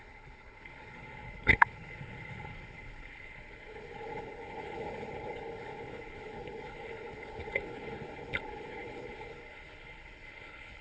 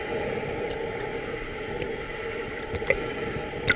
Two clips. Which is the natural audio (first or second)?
second